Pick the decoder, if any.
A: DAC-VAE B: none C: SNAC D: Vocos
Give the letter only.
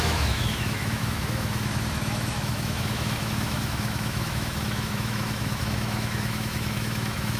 A